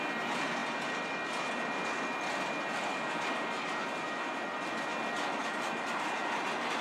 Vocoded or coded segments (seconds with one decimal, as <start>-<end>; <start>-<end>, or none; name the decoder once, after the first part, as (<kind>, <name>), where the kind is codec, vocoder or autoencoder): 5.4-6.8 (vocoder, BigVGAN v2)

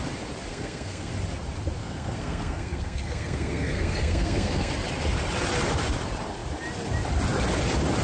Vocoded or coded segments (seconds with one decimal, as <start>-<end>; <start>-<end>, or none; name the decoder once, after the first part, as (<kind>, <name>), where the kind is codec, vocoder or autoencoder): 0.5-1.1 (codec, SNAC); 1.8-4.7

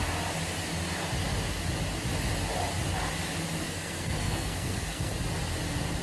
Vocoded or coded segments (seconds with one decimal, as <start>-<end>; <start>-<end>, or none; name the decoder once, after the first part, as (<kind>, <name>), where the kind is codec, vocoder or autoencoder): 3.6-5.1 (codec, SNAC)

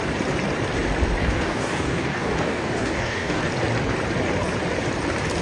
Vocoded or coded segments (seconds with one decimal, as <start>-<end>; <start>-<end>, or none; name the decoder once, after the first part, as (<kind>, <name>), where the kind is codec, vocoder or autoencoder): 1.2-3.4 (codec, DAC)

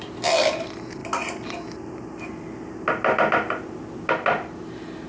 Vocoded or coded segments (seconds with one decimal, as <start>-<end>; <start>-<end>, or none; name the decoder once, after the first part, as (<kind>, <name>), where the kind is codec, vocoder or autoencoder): none

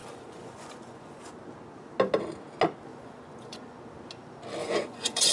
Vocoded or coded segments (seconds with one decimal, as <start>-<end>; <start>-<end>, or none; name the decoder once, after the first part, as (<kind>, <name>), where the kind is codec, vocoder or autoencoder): 0.0-1.2 (vocoder, Vocos); 2.9-3.8; 4.6-5.3

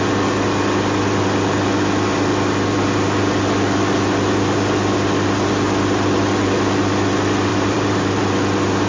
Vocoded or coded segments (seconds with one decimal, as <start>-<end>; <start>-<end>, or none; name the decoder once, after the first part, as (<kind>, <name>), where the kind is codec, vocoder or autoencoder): 7.5-8.2 (vocoder, BigVGAN v2)

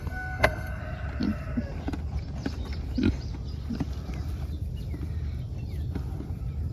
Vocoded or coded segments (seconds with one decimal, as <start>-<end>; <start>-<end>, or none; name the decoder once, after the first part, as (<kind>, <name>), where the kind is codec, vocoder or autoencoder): 0.0-0.8 (codec, SNAC)